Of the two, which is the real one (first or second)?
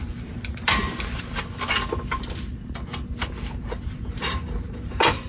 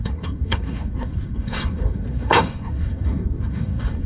first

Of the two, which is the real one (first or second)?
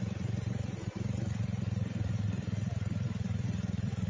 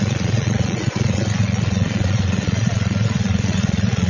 first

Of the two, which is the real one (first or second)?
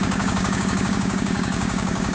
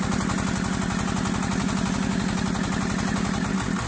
second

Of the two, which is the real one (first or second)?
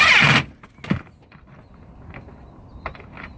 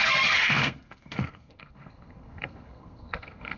first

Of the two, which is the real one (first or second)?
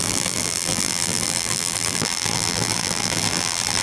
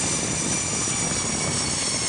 second